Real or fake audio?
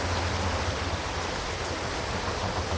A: real